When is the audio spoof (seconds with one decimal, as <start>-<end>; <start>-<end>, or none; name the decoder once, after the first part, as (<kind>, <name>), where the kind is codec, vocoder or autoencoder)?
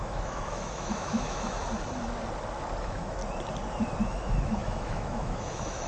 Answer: 0.0-1.6 (autoencoder, DAC-VAE); 2.8-3.2; 4.0-5.9